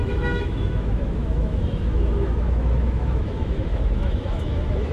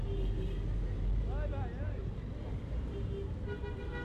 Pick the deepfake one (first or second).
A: first